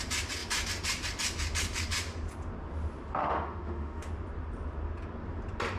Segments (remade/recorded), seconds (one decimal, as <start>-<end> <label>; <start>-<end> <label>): 0.0-3.2 recorded; 3.2-4.1 remade; 4.1-5.8 recorded